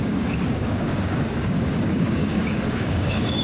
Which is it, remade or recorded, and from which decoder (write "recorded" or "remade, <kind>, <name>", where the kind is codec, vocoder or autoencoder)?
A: remade, codec, DAC